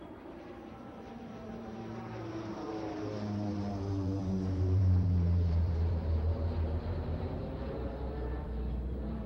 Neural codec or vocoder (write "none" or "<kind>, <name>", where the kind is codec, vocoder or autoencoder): vocoder, BigVGAN v2